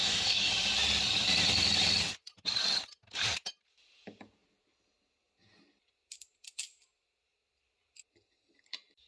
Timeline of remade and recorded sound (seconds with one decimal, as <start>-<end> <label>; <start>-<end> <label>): 0.0-0.5 remade; 0.5-9.1 recorded